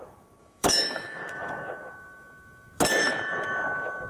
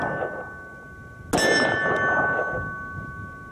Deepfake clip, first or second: first